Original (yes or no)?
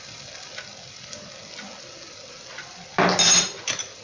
yes